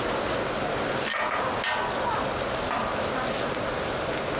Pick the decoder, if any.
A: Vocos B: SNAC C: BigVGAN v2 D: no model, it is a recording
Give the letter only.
D